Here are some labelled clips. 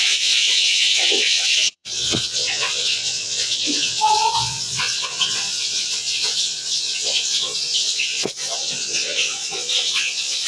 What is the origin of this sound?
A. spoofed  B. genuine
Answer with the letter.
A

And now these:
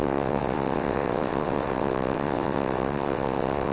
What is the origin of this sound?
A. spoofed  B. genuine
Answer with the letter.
A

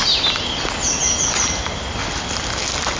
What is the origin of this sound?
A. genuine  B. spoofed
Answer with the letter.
A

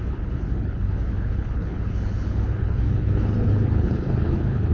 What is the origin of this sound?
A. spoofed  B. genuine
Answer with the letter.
A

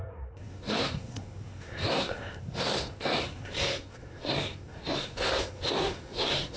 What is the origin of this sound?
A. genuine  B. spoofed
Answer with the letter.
B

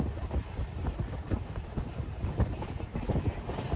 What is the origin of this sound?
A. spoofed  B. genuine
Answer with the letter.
B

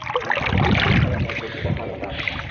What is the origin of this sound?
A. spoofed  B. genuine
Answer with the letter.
B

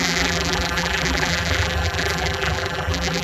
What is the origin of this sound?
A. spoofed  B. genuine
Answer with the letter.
A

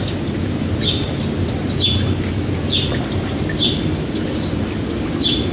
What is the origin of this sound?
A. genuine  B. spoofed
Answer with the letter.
A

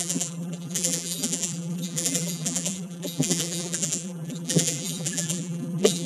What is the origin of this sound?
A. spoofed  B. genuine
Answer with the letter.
A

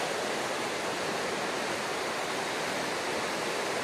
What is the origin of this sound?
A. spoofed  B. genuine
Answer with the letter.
B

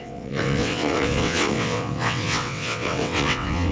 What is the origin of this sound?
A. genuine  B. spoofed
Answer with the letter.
B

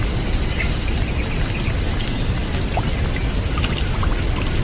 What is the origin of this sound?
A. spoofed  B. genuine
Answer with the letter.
B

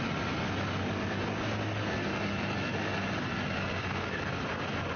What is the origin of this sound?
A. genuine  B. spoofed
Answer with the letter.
A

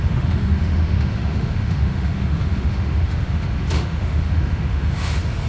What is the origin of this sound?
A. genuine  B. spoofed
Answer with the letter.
B